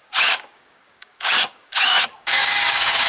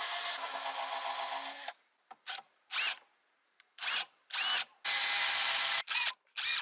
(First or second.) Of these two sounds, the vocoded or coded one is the first